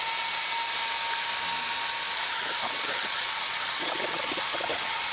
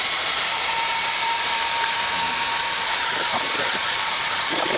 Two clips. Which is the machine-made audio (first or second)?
second